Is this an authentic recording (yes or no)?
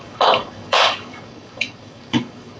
no